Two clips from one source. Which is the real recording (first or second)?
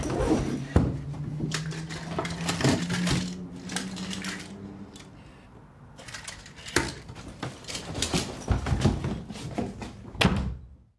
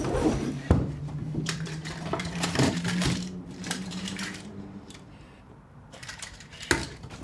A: first